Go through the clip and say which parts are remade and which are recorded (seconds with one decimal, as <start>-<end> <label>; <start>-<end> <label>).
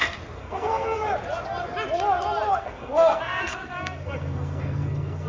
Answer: 0.0-0.4 recorded; 0.4-1.0 remade; 1.0-2.5 recorded; 2.5-5.3 remade